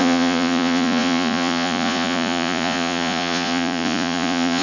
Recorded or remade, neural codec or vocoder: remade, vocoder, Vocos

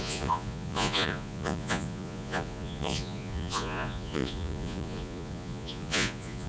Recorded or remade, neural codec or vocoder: remade, vocoder, Vocos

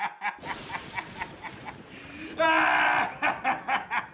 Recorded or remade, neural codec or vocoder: recorded